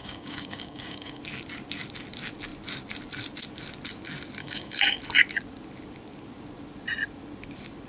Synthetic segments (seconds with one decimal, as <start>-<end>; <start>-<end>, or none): 0.0-1.2; 4.4-5.0